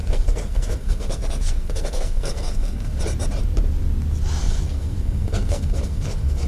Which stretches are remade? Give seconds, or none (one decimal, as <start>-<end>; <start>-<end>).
0.0-3.0; 4.4-6.5